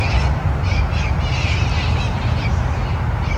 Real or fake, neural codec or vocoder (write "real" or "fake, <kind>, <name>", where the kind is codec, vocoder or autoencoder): real